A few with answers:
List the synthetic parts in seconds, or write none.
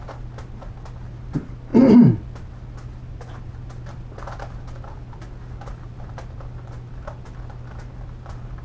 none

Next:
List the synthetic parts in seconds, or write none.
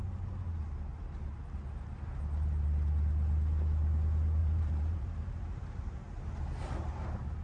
4.4-6.2 (vocoder, BigVGAN v2)